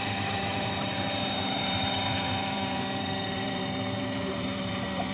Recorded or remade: remade